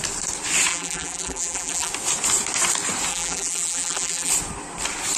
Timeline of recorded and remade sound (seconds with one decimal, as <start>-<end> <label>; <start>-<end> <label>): 0.0-0.7 recorded; 0.7-1.9 remade; 1.9-3.1 recorded; 3.1-4.3 remade; 4.3-5.2 recorded